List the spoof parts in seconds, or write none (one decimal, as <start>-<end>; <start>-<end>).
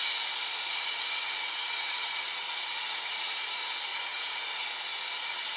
1.2-3.3; 3.9-4.4